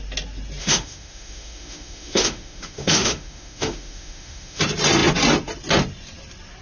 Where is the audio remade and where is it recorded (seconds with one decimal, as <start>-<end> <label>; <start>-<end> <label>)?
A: 0.0-0.6 recorded; 0.6-4.6 remade; 4.6-6.6 recorded